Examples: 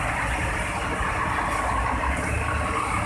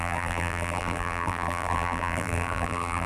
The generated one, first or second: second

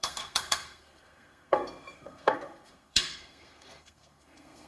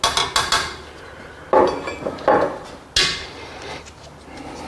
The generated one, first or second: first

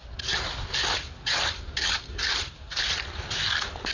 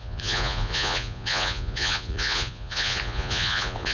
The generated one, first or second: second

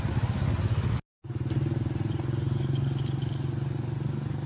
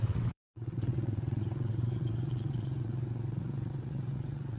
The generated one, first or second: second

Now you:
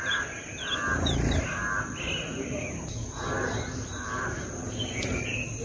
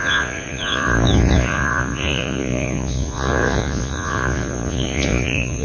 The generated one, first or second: second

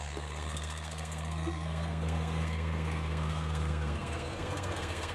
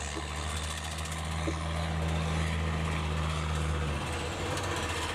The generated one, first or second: first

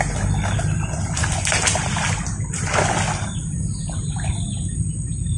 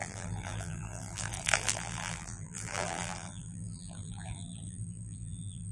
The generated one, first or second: second